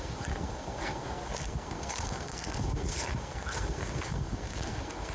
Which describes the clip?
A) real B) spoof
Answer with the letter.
B